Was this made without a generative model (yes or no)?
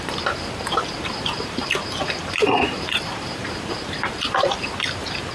no